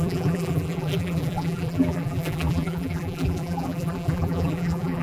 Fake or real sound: fake